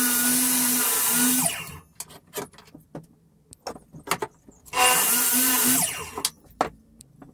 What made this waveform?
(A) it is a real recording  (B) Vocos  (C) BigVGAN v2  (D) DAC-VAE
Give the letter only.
A